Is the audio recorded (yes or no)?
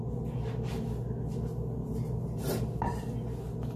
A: yes